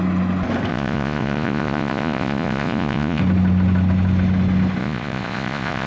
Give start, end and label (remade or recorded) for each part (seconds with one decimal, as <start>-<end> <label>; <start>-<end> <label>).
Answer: 0.0-0.7 recorded; 0.7-3.2 remade; 3.2-4.8 recorded; 4.8-5.9 remade